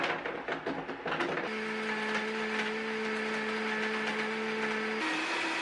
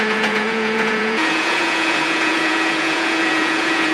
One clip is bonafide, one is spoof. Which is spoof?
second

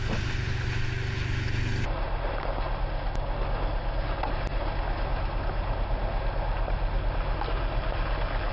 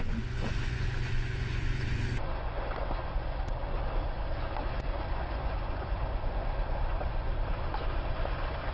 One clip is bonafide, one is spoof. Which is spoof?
second